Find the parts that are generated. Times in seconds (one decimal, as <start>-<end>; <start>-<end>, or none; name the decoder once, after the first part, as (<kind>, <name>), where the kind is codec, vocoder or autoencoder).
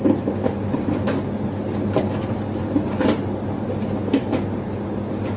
none